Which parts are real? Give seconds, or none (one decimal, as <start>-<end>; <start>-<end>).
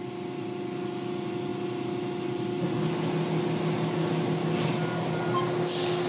0.0-6.1